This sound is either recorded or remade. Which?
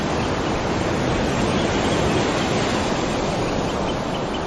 recorded